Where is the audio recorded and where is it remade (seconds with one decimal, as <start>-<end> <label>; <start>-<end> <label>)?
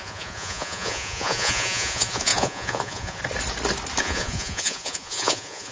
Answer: 0.0-3.2 remade; 3.2-4.0 recorded; 4.0-5.7 remade